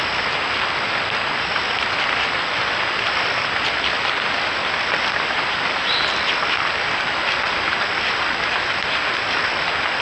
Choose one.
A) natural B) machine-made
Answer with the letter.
A